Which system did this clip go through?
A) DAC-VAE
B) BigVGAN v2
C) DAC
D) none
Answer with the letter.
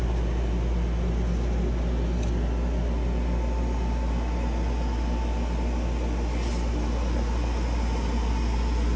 D